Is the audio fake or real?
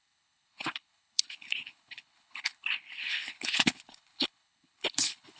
fake